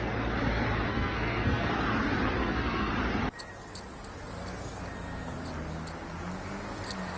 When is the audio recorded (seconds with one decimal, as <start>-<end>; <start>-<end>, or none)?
0.0-0.9; 1.7-2.4; 2.9-7.2